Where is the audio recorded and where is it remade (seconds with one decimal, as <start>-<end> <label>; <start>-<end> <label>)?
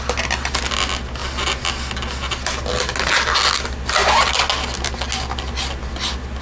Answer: 0.0-6.4 recorded